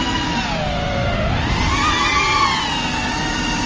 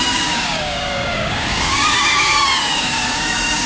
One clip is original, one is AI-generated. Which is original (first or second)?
first